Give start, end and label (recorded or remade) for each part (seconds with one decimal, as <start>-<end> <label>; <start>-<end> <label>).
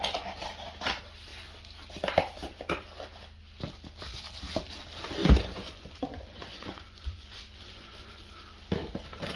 0.0-5.2 recorded; 5.2-8.3 remade; 8.3-9.4 recorded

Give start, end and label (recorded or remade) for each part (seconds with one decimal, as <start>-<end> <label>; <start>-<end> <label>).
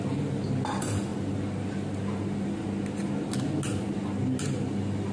0.0-5.1 recorded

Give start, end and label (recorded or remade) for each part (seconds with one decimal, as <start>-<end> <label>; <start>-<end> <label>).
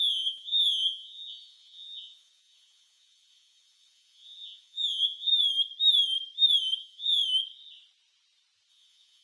0.0-5.3 remade; 5.3-6.8 recorded; 6.8-7.2 remade; 7.2-8.7 recorded; 8.7-9.2 remade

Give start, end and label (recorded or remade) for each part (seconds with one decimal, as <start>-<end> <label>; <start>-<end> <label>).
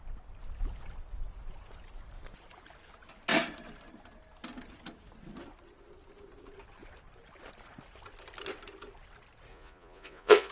0.0-9.5 recorded; 9.5-10.5 remade